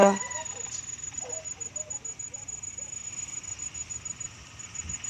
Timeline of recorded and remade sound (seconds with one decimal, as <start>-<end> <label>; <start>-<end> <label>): 0.0-5.1 recorded